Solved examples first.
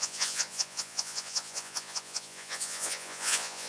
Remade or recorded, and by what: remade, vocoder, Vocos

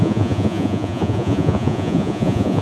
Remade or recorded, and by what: remade, vocoder, Vocos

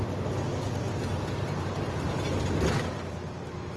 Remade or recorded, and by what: recorded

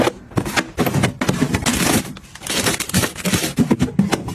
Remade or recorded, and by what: recorded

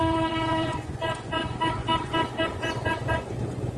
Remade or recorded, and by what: remade, vocoder, Vocos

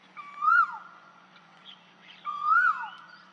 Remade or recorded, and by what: remade, vocoder, Vocos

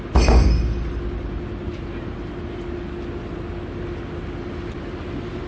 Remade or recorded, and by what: recorded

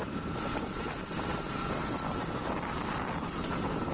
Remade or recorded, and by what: recorded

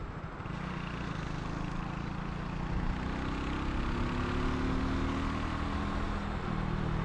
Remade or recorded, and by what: recorded